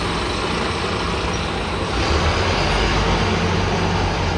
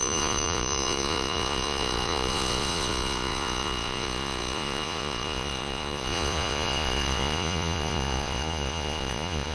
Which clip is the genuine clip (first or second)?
first